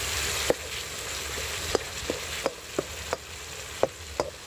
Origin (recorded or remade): recorded